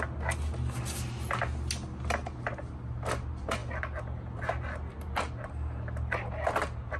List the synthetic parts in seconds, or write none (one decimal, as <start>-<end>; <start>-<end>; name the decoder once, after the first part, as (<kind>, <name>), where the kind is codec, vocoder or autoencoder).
none

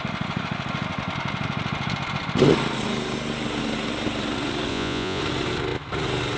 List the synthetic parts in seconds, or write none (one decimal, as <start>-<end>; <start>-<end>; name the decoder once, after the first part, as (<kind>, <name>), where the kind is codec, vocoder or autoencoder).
4.7-5.2 (vocoder, Vocos)